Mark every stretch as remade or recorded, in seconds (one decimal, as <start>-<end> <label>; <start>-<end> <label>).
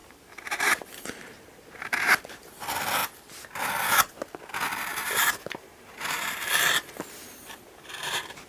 0.0-2.6 remade; 2.6-3.0 recorded; 3.0-3.6 remade; 3.6-4.9 recorded; 4.9-8.5 remade